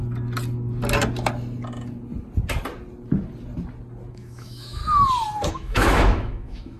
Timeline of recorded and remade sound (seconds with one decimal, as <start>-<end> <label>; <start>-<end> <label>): 0.0-4.1 recorded; 4.1-4.8 remade; 4.8-5.5 recorded; 5.5-6.8 remade